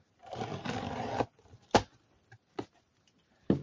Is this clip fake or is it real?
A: real